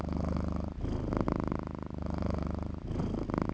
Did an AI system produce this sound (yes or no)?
no